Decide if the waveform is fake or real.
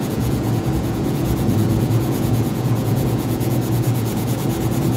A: fake